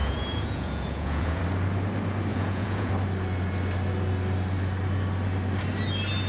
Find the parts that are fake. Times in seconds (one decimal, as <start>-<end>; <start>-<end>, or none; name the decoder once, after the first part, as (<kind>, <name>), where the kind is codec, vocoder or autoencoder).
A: 0.0-1.4 (vocoder, Vocos); 2.3-2.9